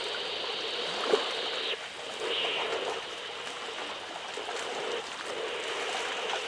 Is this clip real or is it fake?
real